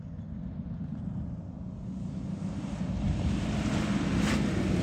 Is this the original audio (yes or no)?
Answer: yes